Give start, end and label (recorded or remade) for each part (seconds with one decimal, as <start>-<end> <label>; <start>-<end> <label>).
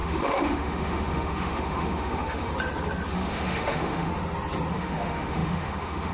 0.0-2.5 remade; 2.5-3.1 recorded; 3.1-4.1 remade; 4.1-4.7 recorded; 4.7-6.1 remade